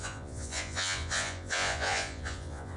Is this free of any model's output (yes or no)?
no